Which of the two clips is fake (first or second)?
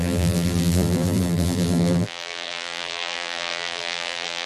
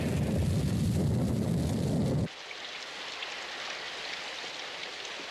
first